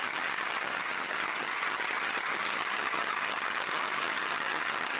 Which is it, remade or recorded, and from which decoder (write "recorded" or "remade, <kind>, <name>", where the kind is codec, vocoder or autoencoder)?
remade, vocoder, HiFi-GAN